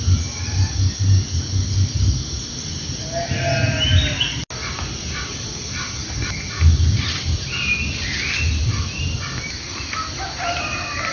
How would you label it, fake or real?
real